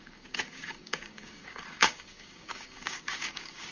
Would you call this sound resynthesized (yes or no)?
yes